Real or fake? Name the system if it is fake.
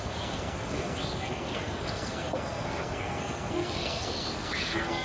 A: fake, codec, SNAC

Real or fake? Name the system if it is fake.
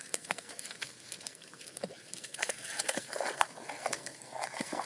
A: fake, codec, SNAC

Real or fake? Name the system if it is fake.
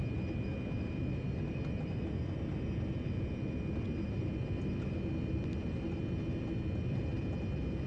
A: real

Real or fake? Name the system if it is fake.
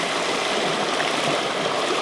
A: real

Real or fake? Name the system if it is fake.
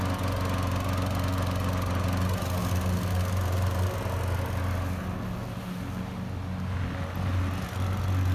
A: real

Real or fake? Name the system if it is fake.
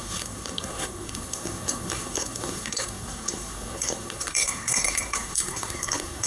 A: fake, codec, SNAC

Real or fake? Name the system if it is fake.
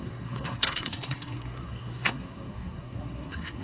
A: fake, codec, SNAC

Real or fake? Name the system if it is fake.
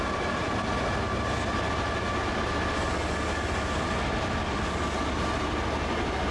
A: real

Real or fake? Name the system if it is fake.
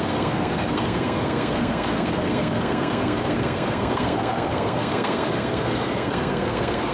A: fake, codec, SNAC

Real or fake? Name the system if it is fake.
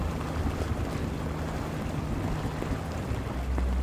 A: real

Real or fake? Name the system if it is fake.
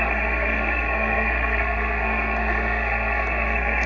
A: fake, codec, SNAC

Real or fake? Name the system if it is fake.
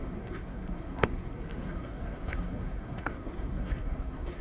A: fake, codec, SNAC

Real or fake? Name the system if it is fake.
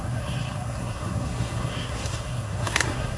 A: fake, codec, SNAC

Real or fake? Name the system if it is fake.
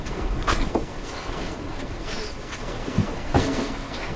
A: fake, codec, SNAC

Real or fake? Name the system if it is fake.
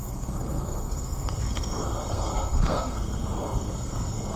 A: fake, codec, SNAC